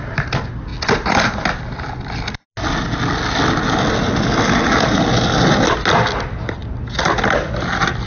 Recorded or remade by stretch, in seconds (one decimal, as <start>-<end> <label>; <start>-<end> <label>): 0.0-8.1 recorded